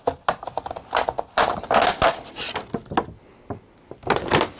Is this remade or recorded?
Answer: recorded